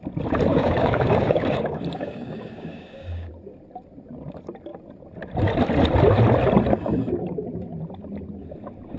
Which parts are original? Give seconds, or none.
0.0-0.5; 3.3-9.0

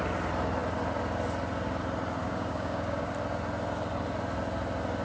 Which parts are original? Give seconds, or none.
0.0-2.2; 3.1-5.0

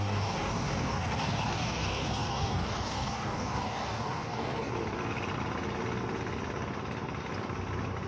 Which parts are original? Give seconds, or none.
4.7-8.1

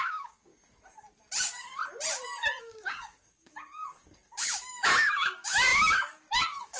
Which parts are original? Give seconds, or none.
0.5-1.4; 1.8-2.6